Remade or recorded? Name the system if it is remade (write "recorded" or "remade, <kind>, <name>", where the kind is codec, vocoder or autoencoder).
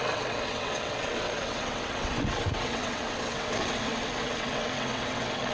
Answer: remade, vocoder, WaveNeXt